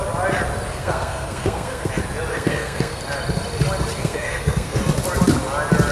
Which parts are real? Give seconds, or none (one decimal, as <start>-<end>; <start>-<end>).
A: 0.0-0.7; 1.9-2.3; 3.0-4.0; 4.8-5.9

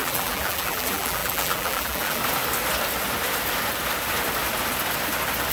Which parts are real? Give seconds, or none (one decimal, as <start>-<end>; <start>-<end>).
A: 2.2-5.5

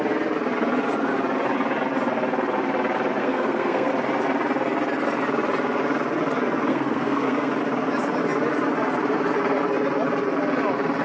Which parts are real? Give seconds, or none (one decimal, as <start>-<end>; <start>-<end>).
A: 0.0-3.2; 3.9-6.7; 7.5-11.0

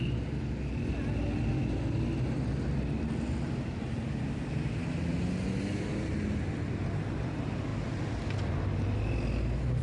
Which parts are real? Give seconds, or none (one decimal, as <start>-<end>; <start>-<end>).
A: 0.0-9.8

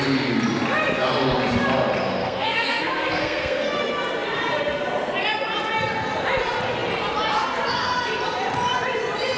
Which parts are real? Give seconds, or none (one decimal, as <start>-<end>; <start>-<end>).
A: 0.0-2.2; 3.8-9.4

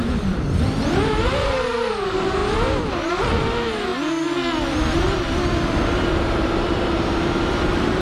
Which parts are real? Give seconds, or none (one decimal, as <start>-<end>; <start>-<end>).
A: 3.9-4.8